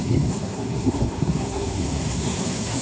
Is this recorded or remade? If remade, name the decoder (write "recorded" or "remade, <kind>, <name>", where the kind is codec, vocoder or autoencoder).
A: remade, codec, SNAC